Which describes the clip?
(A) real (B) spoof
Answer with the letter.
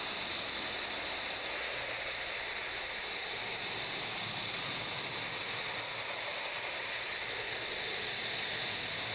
A